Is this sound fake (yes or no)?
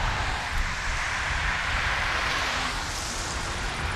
yes